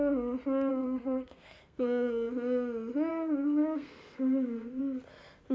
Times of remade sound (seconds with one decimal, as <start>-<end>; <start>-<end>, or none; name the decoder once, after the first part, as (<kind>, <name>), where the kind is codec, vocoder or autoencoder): 0.7-2.3 (codec, SNAC); 3.1-4.8